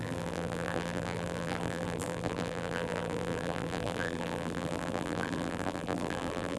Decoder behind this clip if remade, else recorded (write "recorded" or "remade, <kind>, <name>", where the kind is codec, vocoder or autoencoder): remade, vocoder, BigVGAN v2